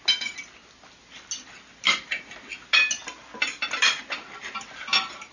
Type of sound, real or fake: real